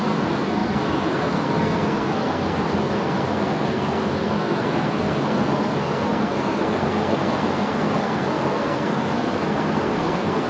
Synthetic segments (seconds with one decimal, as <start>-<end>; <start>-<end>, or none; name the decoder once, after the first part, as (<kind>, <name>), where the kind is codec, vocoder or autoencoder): 0.0-10.5 (codec, SNAC)

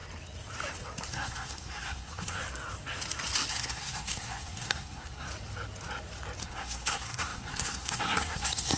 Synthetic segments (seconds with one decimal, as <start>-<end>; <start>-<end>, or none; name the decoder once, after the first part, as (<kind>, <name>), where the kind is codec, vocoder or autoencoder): 1.1-2.4 (codec, SNAC); 3.5-5.3; 6.4-8.8

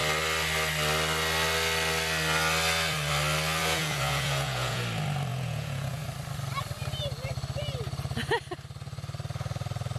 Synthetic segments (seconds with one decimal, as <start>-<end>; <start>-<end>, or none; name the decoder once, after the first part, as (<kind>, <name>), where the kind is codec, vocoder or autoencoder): 3.6-4.8 (vocoder, Vocos); 5.3-6.0

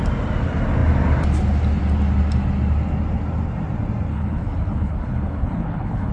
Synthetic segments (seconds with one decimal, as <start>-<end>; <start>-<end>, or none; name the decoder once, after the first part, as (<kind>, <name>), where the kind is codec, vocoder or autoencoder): 4.1-6.1 (codec, HILCodec)

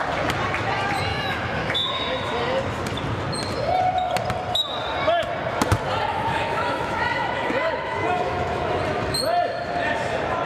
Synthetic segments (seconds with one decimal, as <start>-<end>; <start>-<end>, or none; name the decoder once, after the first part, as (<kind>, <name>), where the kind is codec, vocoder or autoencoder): 1.1-1.9 (autoencoder, DAC-VAE); 6.1-8.8